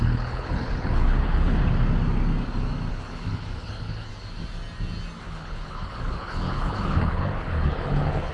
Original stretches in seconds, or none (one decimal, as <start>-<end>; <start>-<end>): 1.6-2.9; 4.1-5.2